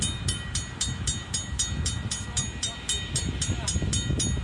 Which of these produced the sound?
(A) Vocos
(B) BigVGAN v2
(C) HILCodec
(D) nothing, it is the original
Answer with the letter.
D